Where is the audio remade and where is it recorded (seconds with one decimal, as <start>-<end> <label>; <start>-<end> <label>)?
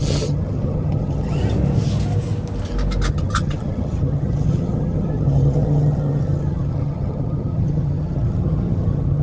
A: 0.0-1.4 remade; 1.4-3.1 recorded; 3.1-9.2 remade